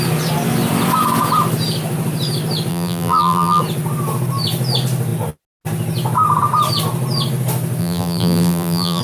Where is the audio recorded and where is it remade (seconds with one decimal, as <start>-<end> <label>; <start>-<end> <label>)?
0.0-2.7 recorded; 2.7-3.6 remade; 3.6-7.8 recorded; 7.8-9.0 remade